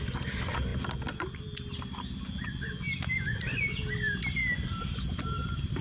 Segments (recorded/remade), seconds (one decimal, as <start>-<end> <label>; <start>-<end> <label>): 0.0-4.4 recorded; 4.4-5.8 remade